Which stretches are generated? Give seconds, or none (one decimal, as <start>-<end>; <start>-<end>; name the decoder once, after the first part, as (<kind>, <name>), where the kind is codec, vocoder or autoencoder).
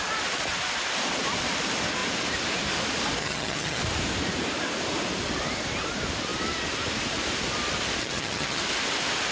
3.2-3.8 (vocoder, HiFi-GAN); 8.0-8.6